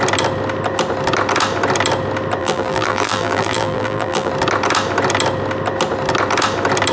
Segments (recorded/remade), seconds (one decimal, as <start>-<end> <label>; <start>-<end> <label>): 0.0-2.4 recorded; 2.4-4.3 remade; 4.3-6.9 recorded